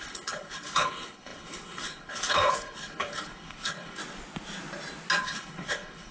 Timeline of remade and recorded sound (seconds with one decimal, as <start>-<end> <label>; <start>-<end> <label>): 0.0-4.0 remade; 4.0-5.2 recorded; 5.2-6.1 remade